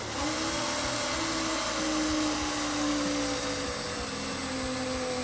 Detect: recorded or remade recorded